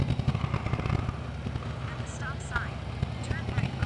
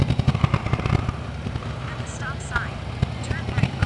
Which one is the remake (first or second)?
second